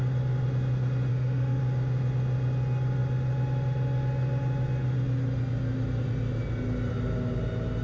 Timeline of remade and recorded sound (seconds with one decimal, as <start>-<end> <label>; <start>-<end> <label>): 0.0-1.1 recorded; 1.1-1.6 remade; 1.6-7.8 recorded